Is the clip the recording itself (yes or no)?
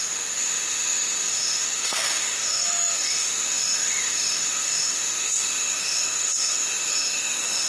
no